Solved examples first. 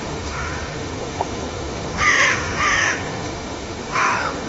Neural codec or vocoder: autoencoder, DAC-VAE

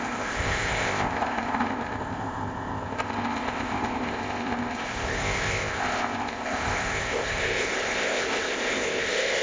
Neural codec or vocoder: codec, ZipCodec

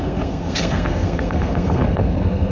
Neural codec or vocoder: codec, SNAC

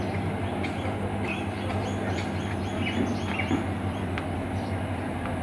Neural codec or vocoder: none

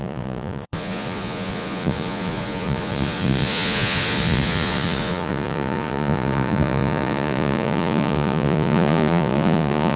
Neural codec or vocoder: vocoder, Vocos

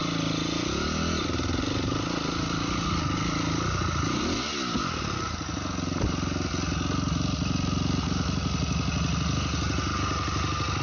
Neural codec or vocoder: none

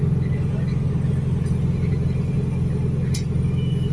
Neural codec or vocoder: none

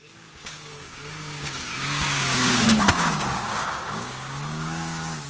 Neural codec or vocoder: codec, DAC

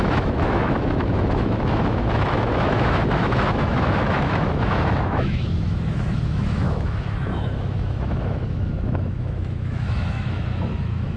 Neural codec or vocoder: autoencoder, DAC-VAE